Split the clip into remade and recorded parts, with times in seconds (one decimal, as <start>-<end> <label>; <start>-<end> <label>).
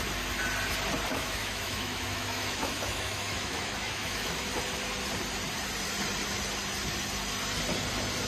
0.0-1.1 recorded; 1.1-4.5 remade; 4.5-8.3 recorded